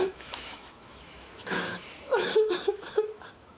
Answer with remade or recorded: remade